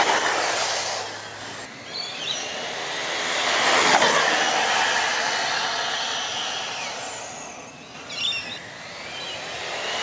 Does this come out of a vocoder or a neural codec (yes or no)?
no